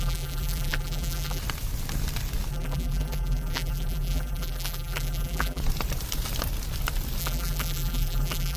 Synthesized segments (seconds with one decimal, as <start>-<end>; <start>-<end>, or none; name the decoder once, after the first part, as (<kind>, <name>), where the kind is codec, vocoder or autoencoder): 0.0-1.4 (vocoder, BigVGAN v2); 2.5-5.6; 7.2-8.6

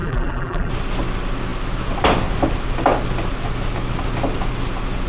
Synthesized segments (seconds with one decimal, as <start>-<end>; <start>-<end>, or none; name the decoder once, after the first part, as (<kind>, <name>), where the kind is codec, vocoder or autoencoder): 0.0-0.7 (vocoder, BigVGAN v2)

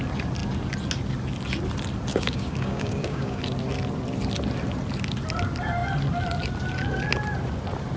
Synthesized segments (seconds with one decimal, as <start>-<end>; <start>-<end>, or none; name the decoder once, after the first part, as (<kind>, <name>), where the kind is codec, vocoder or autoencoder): 2.1-3.4 (codec, DAC)